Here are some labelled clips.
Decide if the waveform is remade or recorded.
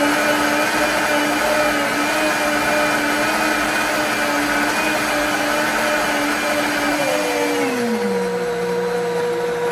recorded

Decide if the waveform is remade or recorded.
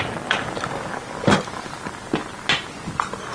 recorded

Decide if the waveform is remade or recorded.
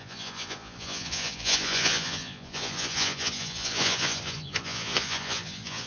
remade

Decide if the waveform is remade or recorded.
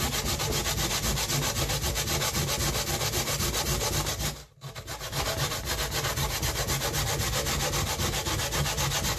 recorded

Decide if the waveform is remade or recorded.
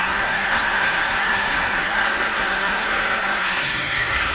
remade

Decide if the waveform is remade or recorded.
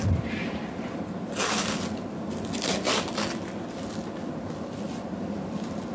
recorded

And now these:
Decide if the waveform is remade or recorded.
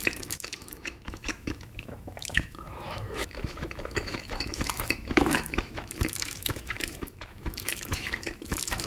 remade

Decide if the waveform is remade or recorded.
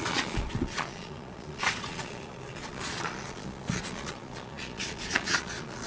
remade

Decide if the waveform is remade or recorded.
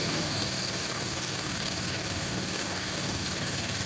remade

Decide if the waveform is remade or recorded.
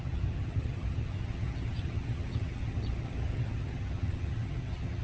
remade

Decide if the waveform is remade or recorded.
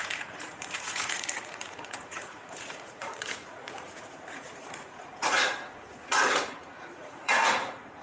remade